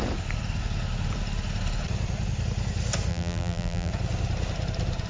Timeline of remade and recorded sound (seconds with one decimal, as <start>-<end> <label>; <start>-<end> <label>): 0.0-3.1 recorded; 3.1-3.9 remade; 3.9-5.1 recorded